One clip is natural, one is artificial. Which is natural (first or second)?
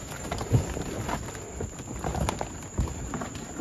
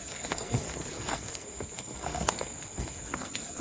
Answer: first